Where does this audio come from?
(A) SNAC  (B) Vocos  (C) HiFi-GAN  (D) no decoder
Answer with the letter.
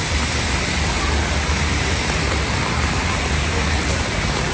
D